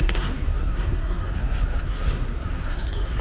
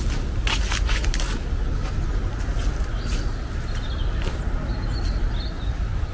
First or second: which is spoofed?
first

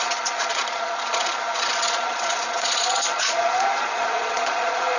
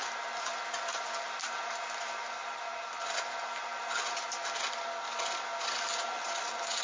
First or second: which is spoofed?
first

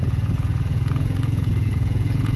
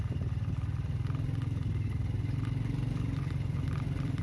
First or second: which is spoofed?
first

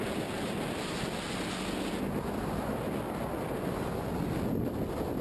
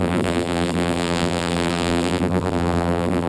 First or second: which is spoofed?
second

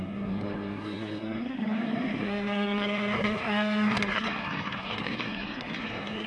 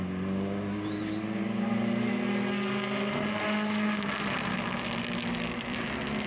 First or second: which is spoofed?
first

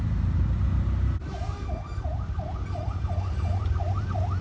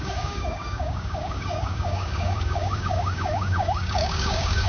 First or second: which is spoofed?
second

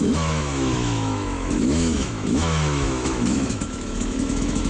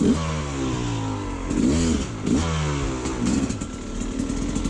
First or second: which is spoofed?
first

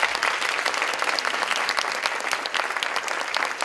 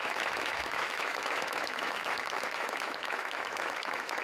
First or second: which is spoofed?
second